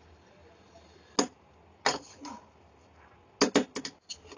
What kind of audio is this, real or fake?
real